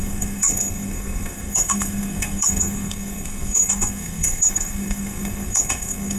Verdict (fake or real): fake